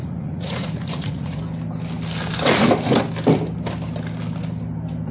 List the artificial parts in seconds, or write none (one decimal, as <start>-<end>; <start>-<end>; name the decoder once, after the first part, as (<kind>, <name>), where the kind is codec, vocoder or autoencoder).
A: 0.0-1.4 (vocoder, Vocos)